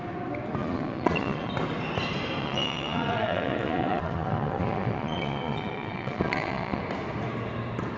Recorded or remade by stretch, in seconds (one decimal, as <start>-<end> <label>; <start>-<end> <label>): 0.0-0.6 recorded; 0.6-1.5 remade; 1.5-2.4 recorded; 2.4-6.8 remade; 6.8-8.0 recorded